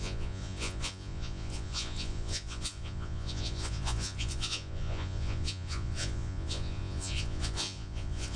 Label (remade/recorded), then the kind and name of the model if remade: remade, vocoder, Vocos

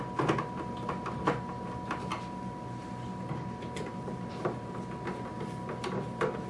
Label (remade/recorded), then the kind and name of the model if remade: recorded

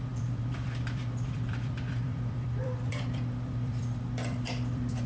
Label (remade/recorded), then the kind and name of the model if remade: remade, vocoder, BigVGAN v2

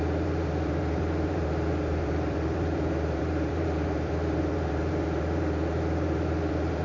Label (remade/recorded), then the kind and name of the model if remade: remade, vocoder, BigVGAN v2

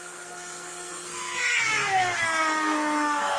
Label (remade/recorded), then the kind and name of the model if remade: remade, codec, SNAC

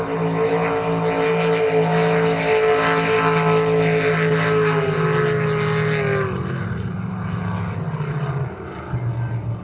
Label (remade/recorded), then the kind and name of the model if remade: recorded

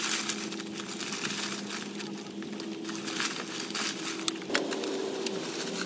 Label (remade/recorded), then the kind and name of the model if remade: recorded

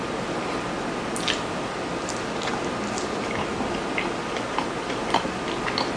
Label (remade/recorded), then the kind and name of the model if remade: recorded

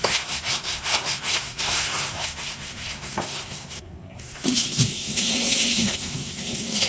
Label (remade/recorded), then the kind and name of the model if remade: remade, codec, SNAC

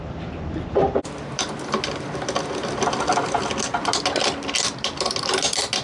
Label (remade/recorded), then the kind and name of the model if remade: recorded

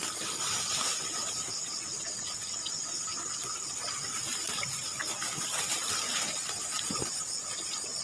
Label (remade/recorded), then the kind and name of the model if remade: recorded